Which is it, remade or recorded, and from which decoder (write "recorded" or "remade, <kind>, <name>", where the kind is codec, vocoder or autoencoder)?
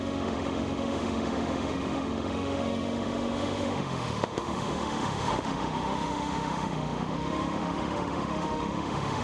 remade, autoencoder, DAC-VAE